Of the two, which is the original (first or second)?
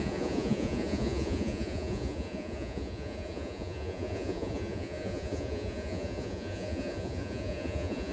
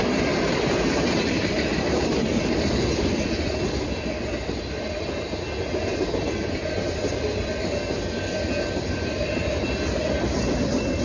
second